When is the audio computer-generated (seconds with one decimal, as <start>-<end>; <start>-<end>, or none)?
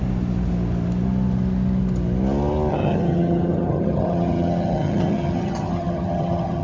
2.7-6.6